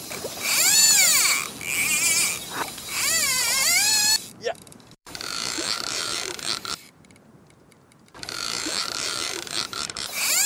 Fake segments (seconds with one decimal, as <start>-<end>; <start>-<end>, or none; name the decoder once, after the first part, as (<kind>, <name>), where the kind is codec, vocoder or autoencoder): 0.0-1.1 (vocoder, BigVGAN v2); 2.6-3.9; 4.6-10.5